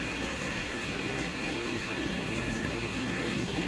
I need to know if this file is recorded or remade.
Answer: remade